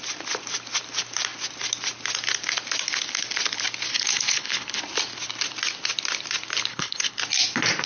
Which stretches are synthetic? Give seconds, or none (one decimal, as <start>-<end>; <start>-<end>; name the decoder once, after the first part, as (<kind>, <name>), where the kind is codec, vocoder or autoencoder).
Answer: 3.9-4.8 (codec, HILCodec); 6.7-7.2